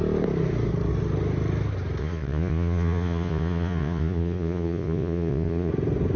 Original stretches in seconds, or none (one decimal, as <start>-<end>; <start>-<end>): 0.0-2.0; 5.7-6.2